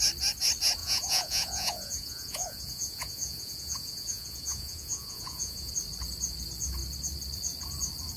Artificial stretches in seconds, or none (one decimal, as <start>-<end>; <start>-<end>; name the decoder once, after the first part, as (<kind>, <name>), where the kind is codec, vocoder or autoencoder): 0.8-5.7 (vocoder, Vocos)